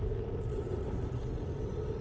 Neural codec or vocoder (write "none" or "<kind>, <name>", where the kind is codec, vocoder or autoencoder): none